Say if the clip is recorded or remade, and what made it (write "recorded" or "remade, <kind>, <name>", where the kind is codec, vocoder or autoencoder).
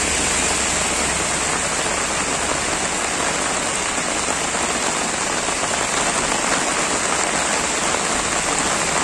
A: recorded